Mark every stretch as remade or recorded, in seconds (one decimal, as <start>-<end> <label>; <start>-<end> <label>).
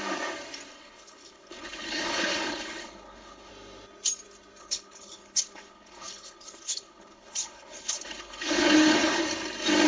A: 0.0-0.7 recorded; 0.7-3.5 remade; 3.5-4.6 recorded; 4.6-9.2 remade; 9.2-9.9 recorded